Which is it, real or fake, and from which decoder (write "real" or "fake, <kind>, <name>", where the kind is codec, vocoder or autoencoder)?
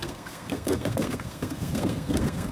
fake, codec, SNAC